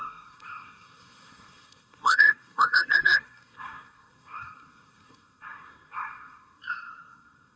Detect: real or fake fake